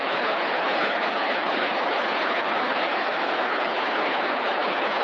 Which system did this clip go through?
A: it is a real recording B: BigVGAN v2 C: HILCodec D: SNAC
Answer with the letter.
C